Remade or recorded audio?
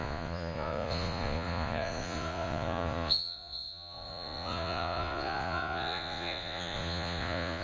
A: remade